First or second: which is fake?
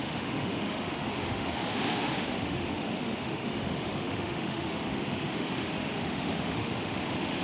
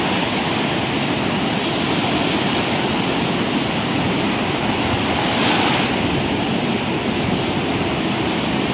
first